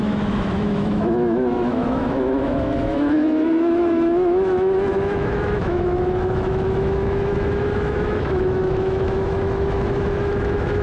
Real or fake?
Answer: fake